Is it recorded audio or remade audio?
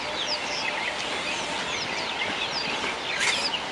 recorded